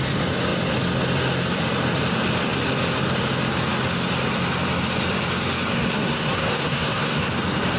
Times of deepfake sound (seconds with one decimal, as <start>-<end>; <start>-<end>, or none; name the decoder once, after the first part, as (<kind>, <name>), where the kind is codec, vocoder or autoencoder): 5.7-7.3 (codec, SNAC)